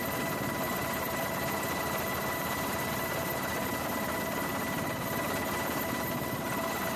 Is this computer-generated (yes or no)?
yes